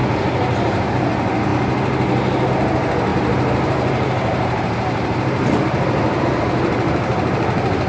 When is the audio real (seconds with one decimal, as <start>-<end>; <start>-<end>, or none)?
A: 0.0-3.1; 6.2-7.9